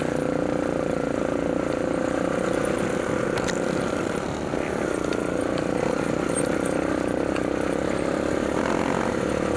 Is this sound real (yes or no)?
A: yes